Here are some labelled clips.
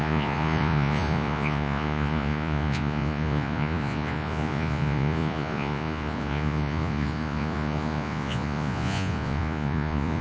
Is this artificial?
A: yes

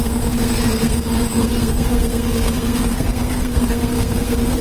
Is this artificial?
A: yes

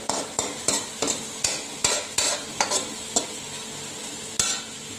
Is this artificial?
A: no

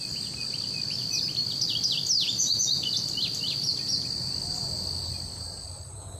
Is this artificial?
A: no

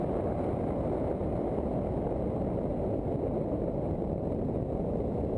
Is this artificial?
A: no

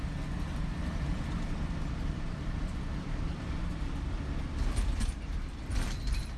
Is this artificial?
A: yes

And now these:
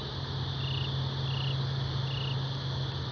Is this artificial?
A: no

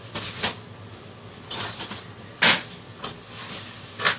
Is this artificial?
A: no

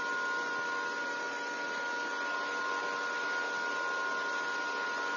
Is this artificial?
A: no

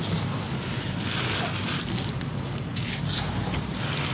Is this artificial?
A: no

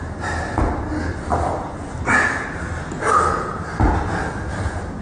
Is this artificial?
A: no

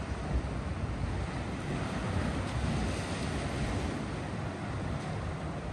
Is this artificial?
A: no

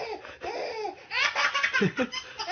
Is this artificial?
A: no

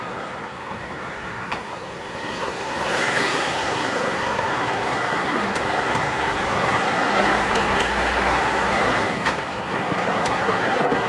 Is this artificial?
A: yes